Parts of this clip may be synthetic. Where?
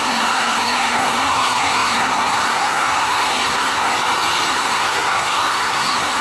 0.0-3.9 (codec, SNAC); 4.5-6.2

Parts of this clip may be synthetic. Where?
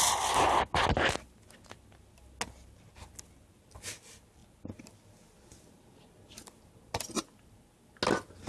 none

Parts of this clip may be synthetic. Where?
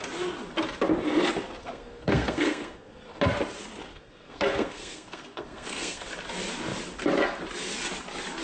1.6-3.0 (codec, SNAC); 3.9-6.1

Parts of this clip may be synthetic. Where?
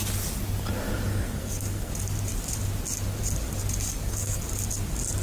1.1-1.9 (codec, SNAC); 3.9-4.4